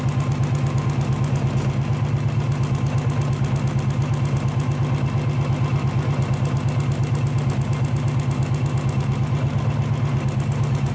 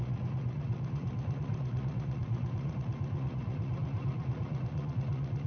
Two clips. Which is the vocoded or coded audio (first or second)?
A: second